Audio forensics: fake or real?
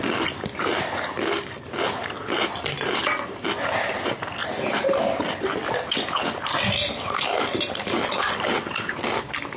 real